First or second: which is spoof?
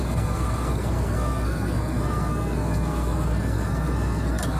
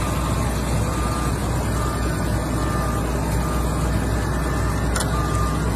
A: first